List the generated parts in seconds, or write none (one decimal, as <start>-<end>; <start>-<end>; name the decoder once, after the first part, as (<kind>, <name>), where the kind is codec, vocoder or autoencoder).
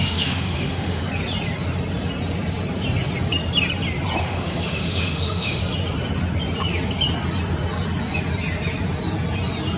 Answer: 0.0-1.0 (autoencoder, DAC-VAE); 4.2-5.6